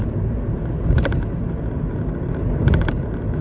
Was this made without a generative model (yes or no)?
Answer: no